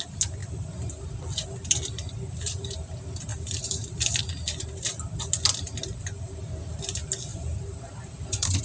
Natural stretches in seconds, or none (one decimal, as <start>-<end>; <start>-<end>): 0.0-3.3; 4.2-7.3